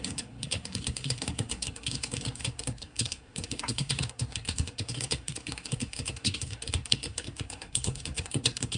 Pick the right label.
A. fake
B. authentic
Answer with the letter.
A